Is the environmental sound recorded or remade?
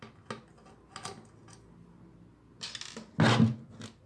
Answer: recorded